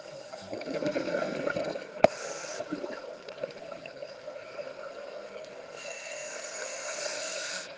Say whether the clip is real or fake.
fake